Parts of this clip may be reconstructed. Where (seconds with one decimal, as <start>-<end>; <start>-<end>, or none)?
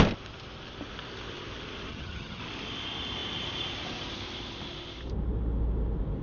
1.9-2.4